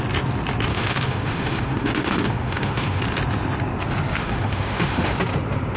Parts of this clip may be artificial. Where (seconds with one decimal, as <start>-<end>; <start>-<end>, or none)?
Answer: 0.7-3.0; 4.2-5.1